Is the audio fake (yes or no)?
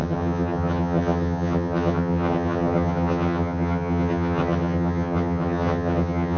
yes